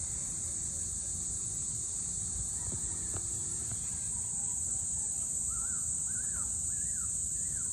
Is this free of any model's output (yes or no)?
no